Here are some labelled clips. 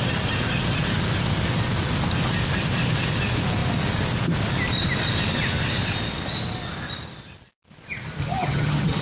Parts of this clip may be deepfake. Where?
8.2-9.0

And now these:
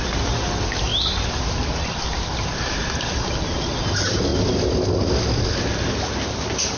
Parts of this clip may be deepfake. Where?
none

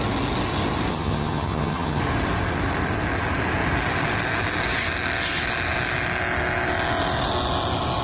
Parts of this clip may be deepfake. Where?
0.9-2.0